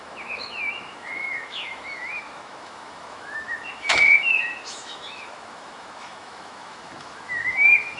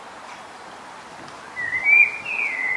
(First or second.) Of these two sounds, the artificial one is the first